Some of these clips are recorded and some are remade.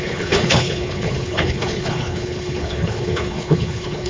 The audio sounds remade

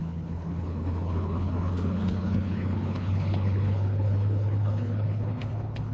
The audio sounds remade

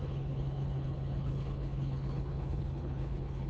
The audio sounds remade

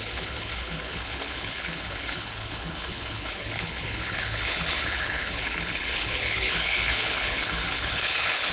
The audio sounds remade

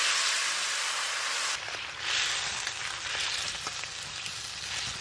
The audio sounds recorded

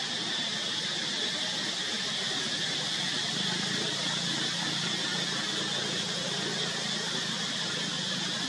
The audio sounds recorded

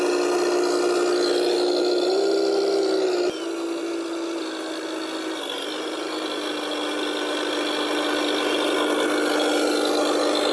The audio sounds recorded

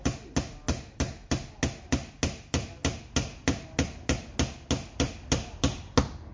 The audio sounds recorded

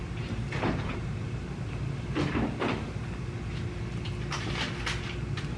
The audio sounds recorded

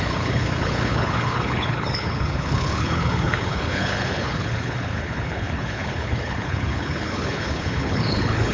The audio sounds remade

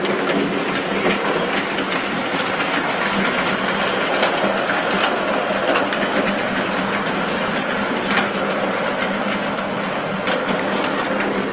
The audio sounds recorded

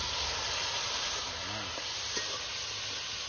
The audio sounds recorded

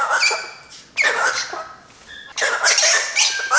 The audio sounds recorded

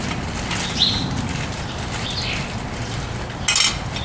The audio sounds recorded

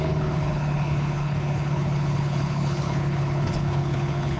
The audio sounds remade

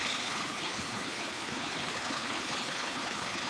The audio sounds remade